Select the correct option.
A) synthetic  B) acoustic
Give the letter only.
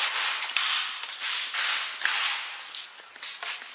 B